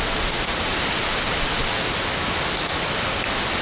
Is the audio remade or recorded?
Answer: recorded